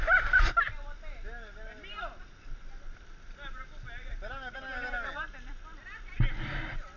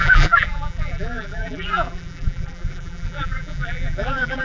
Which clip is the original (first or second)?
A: first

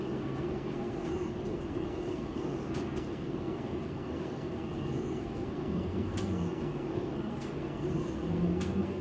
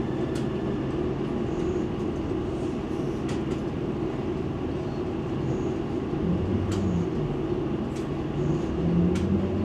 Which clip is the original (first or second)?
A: second